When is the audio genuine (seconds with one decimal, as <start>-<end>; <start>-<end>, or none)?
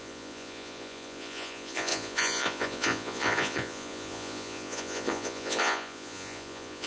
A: none